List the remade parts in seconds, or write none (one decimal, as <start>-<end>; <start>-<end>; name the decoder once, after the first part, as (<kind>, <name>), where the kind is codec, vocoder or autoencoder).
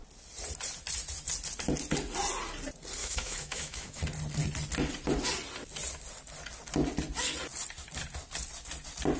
3.0-4.0 (autoencoder, DAC-VAE)